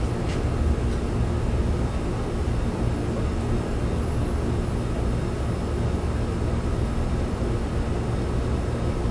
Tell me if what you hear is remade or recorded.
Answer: recorded